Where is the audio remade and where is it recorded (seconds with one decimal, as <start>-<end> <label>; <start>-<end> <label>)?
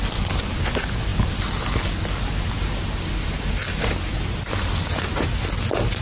0.0-6.0 recorded